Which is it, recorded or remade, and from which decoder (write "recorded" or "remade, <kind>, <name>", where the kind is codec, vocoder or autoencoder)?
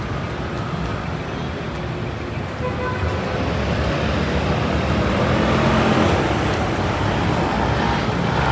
recorded